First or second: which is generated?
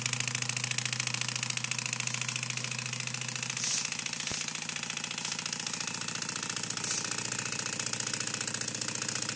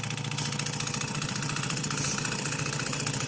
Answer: second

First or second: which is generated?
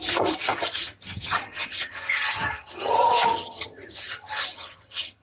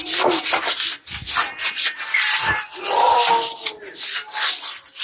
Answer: first